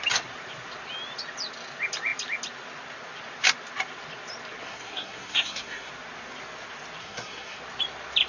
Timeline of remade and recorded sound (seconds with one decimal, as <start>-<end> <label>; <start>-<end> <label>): 0.0-4.6 recorded; 4.6-5.9 remade; 5.9-7.0 recorded; 7.0-7.6 remade; 7.6-8.3 recorded